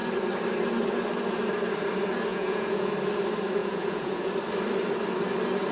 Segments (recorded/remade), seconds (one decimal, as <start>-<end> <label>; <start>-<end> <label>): 0.0-2.3 recorded; 2.3-2.9 remade; 2.9-3.6 recorded; 3.6-4.3 remade; 4.3-5.7 recorded